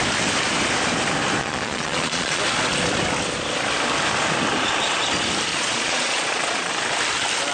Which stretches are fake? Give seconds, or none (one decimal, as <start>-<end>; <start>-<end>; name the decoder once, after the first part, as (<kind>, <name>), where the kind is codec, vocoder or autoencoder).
1.4-2.4 (vocoder, Vocos); 5.5-6.7